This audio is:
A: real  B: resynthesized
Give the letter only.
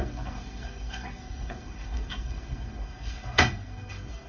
B